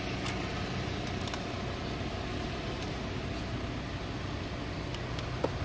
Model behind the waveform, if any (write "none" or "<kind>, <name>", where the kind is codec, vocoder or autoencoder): none